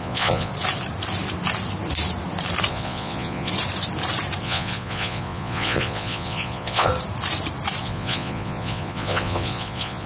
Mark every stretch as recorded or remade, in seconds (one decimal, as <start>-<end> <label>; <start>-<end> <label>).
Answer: 0.0-0.5 remade; 0.5-2.7 recorded; 2.7-3.5 remade; 3.5-4.4 recorded; 4.4-6.9 remade; 6.9-7.8 recorded; 7.8-10.1 remade